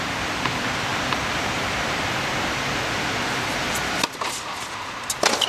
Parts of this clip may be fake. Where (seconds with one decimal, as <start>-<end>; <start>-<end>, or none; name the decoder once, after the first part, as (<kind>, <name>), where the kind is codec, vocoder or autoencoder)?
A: 0.9-4.2 (vocoder, BigVGAN v2)